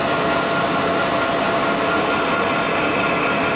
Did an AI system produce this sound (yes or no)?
no